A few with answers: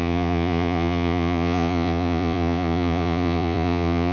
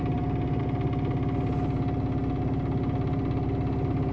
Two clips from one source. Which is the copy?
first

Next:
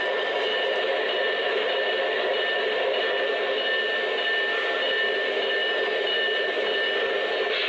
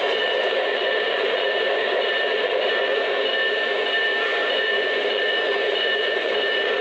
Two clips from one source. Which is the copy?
second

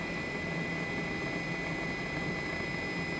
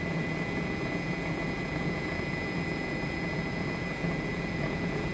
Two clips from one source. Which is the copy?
second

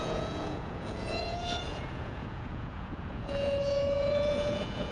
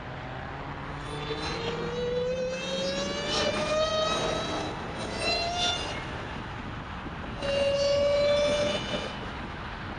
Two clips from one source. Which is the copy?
first